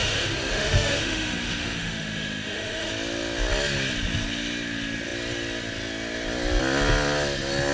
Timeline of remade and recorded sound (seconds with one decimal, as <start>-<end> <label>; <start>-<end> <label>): 0.0-2.9 remade; 2.9-7.7 recorded